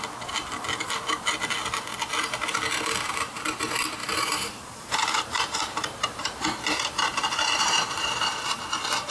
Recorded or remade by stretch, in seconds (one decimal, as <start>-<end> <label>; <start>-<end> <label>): 0.0-4.0 recorded; 4.0-8.6 remade; 8.6-9.1 recorded